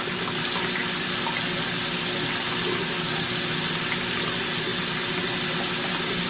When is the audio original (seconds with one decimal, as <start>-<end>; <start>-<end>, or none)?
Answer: 0.0-6.3